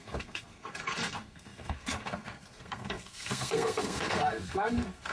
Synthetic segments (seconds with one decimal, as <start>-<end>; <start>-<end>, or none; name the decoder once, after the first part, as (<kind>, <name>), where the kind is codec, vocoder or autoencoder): 0.0-5.1 (codec, SNAC)